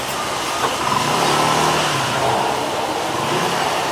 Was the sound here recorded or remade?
recorded